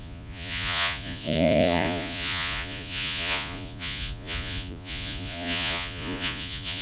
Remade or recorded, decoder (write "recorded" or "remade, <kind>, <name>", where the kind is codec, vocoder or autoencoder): remade, vocoder, Vocos